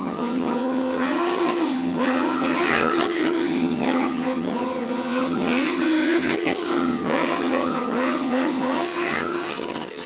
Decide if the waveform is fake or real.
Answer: fake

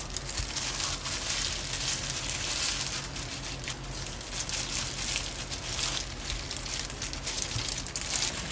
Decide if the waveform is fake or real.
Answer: real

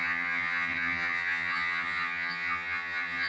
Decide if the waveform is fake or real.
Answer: fake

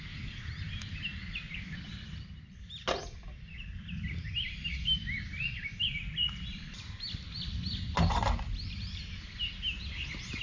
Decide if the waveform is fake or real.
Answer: real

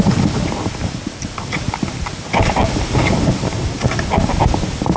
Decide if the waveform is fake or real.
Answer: real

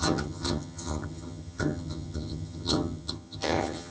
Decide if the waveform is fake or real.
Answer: fake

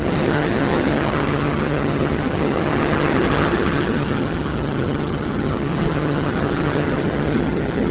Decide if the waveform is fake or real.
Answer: fake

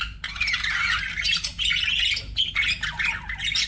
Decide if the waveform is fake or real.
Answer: real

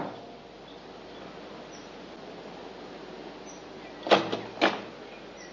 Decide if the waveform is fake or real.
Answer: real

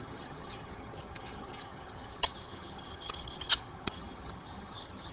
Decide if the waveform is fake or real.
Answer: fake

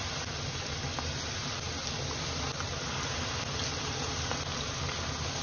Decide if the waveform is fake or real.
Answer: real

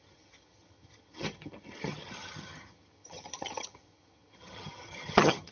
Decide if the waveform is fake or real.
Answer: fake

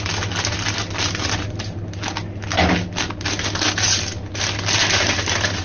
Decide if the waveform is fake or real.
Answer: real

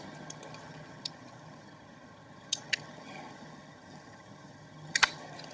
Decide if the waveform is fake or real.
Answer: fake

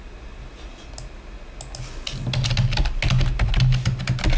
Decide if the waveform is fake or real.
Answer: real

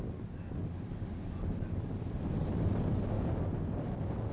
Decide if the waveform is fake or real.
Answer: real